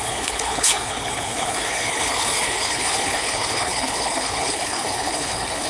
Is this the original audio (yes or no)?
no